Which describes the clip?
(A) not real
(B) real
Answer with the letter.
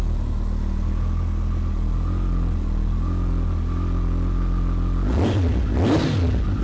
B